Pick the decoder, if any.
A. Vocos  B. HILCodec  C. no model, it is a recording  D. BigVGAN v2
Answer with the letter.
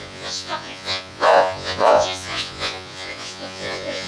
A